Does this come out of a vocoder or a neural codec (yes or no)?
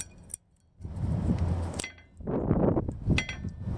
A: no